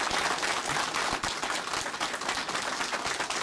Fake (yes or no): no